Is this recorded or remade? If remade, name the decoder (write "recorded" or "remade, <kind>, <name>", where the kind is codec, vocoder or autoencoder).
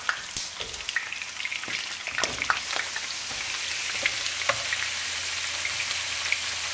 recorded